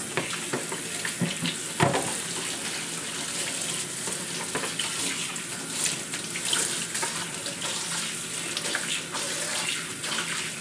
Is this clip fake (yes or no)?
no